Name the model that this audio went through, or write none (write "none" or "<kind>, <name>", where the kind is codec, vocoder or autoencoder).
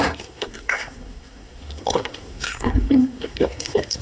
codec, SNAC